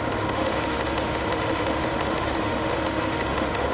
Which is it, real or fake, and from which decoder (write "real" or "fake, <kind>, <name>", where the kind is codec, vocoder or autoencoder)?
fake, autoencoder, DAC-VAE